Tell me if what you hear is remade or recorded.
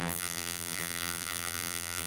remade